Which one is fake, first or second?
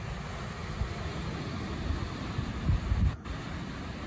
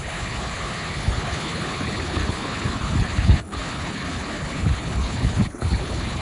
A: second